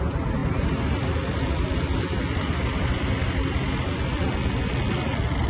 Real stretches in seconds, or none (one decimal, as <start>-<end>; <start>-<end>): 0.0-5.5